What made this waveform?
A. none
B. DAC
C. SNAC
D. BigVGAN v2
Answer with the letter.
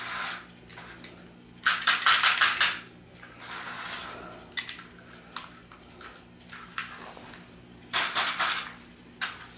A